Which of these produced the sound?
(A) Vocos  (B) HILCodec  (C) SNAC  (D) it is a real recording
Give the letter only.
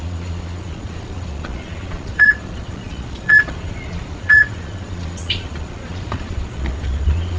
A